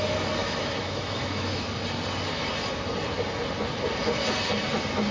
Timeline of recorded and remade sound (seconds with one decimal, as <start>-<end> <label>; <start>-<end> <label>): 0.0-0.4 recorded; 0.4-1.7 remade; 1.7-5.1 recorded